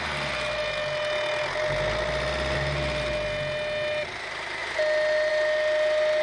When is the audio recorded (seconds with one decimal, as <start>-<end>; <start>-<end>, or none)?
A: 0.0-6.2